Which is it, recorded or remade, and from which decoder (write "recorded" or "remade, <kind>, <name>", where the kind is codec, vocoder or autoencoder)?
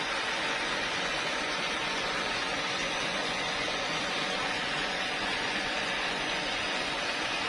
remade, vocoder, Vocos